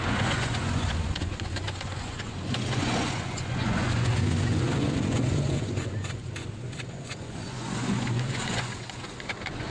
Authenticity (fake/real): fake